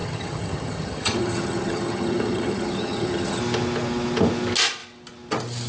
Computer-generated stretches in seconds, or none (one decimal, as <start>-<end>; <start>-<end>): 0.0-3.4